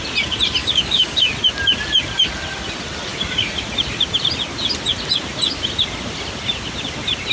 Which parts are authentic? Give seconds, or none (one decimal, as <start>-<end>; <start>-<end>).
0.0-0.6; 1.3-7.3